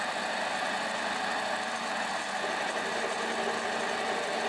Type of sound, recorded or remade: recorded